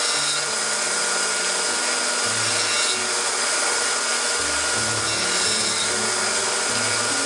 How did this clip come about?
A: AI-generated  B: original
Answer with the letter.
B